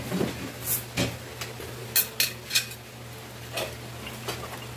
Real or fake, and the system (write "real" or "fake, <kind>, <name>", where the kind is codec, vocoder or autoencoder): real